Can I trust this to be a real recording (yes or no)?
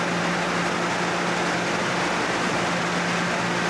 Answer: yes